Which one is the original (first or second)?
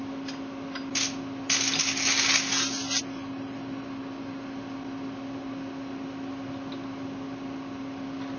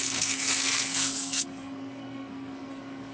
first